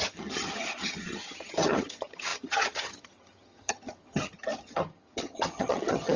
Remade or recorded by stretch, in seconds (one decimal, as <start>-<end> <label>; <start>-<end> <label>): 0.0-6.2 remade